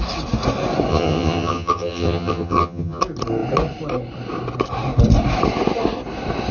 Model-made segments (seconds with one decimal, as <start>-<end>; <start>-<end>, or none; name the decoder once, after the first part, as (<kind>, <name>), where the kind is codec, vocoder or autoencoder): 0.9-3.0 (vocoder, HiFi-GAN)